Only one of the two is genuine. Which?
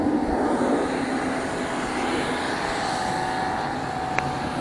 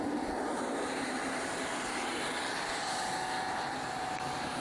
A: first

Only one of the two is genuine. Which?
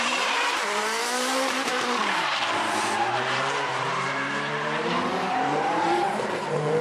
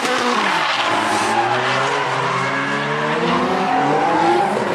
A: second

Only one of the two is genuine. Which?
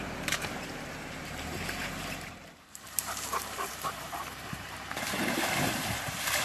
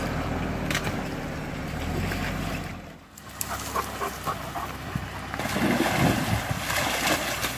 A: second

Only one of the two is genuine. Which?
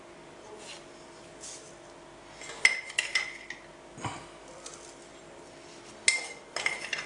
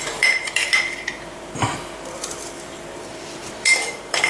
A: first